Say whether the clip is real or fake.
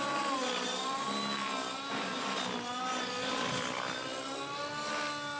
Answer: real